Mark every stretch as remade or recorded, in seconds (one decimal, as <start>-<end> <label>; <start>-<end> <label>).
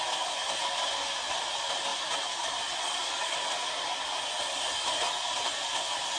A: 0.0-6.2 recorded